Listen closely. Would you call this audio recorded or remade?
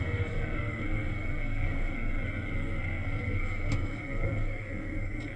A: remade